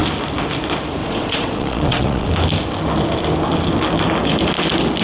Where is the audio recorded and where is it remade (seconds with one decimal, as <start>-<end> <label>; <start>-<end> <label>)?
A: 0.0-1.0 recorded; 1.0-2.3 remade; 2.3-5.0 recorded